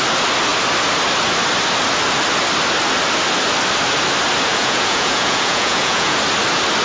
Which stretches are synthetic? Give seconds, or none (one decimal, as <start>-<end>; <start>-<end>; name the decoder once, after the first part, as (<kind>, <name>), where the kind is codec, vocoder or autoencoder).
4.5-6.2 (vocoder, Vocos)